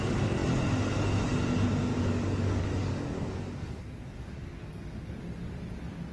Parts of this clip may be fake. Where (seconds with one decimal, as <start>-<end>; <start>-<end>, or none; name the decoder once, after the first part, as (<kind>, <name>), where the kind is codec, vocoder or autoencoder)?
1.9-5.2 (codec, DAC)